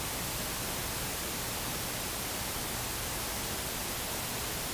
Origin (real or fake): real